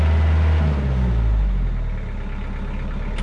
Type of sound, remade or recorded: recorded